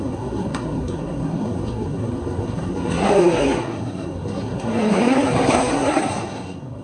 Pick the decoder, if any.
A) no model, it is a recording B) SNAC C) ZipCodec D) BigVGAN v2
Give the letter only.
B